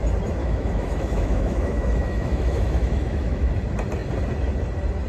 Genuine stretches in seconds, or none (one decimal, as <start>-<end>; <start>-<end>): 0.0-0.4; 3.5-5.1